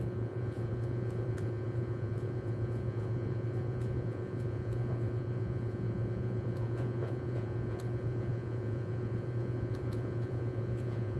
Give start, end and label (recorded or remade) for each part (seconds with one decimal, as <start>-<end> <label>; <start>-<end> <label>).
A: 0.0-11.2 remade